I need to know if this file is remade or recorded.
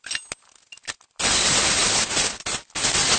recorded